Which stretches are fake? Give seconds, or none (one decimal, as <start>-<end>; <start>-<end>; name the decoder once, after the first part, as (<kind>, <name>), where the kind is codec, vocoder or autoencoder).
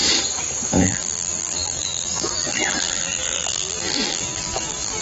0.8-5.0 (vocoder, BigVGAN v2)